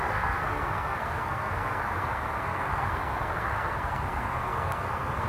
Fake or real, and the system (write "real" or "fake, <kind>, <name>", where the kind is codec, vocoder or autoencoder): fake, codec, SNAC